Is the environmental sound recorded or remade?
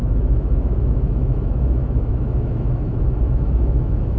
remade